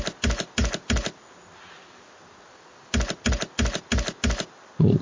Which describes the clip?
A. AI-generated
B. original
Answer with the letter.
B